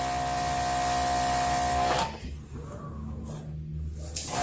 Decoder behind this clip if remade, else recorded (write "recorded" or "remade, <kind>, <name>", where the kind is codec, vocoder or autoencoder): recorded